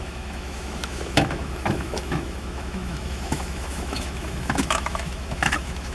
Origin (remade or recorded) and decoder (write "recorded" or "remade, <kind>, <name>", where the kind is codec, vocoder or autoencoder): remade, autoencoder, DAC-VAE